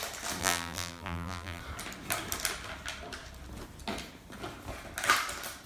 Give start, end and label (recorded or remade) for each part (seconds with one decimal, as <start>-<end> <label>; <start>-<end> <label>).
0.0-0.4 recorded; 0.4-1.6 remade; 1.6-5.7 recorded

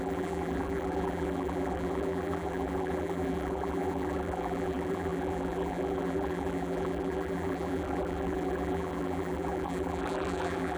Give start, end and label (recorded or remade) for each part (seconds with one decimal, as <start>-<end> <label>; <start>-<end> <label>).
0.0-10.8 remade